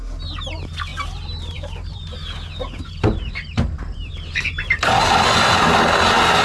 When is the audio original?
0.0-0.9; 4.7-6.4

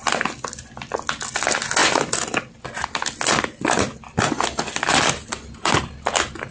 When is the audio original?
0.5-6.5

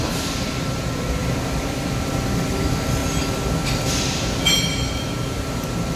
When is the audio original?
3.0-6.0